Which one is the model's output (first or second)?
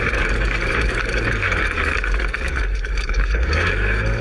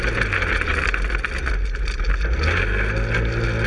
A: first